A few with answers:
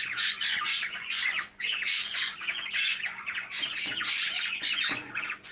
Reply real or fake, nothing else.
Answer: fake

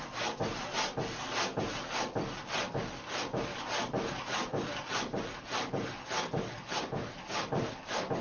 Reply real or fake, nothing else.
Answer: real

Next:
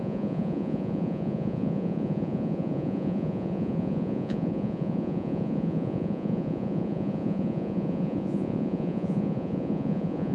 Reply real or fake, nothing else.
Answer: fake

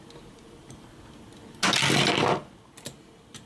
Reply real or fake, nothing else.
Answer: real